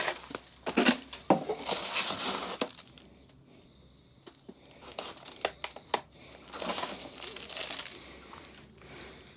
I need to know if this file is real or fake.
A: real